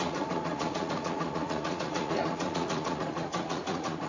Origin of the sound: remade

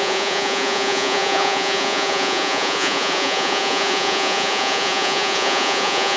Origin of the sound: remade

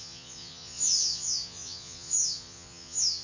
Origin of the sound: remade